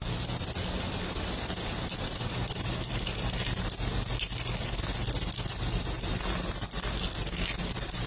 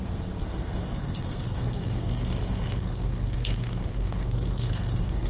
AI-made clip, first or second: second